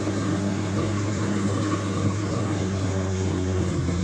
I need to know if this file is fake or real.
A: fake